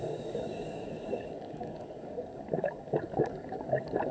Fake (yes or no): yes